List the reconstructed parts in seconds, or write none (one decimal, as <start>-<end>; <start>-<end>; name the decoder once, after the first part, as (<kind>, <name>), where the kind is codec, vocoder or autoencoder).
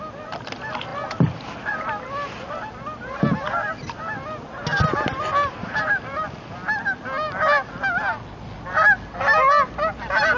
none